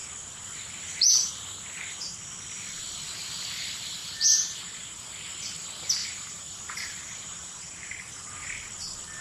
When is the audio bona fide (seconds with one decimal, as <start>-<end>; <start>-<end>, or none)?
0.0-4.0; 5.1-6.0; 8.0-9.2